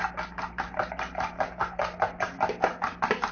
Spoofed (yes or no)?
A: no